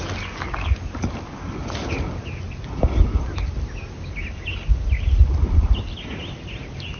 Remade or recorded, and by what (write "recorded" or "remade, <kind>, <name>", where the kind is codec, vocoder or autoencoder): recorded